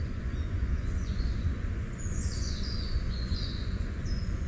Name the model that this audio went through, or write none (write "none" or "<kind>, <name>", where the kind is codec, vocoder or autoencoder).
vocoder, Vocos